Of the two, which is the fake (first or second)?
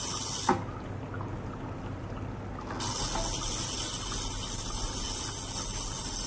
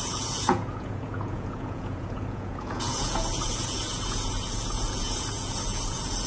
second